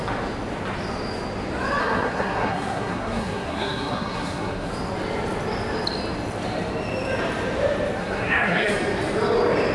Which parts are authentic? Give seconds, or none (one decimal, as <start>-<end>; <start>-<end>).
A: 0.0-1.8; 4.7-8.0; 8.7-9.7